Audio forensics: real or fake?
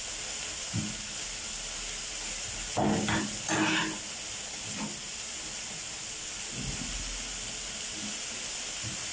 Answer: real